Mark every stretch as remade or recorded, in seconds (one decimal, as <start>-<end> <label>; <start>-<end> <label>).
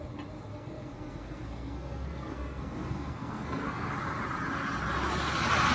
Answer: 0.0-0.5 recorded; 0.5-3.9 remade; 3.9-5.7 recorded